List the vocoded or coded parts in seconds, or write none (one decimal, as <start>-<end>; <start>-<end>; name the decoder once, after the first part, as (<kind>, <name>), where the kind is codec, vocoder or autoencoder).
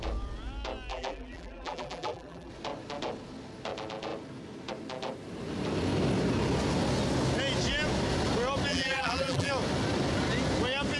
0.9-2.5 (vocoder, BigVGAN v2); 8.7-9.5